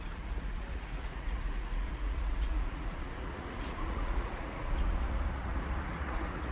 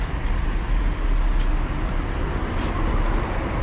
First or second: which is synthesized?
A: first